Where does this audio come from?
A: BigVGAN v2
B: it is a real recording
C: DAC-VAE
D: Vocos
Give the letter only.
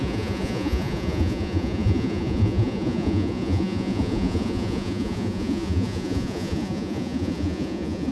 D